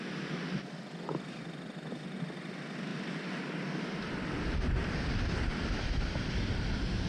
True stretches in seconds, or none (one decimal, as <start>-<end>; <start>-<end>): 0.0-7.1